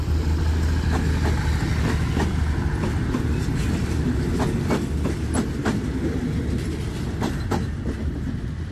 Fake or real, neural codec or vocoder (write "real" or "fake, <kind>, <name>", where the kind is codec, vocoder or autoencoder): real